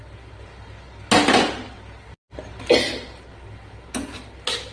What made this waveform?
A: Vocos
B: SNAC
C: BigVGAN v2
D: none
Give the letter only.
D